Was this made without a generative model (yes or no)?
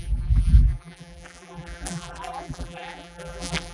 no